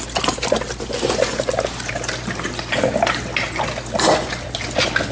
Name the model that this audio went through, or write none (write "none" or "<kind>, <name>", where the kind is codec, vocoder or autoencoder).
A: none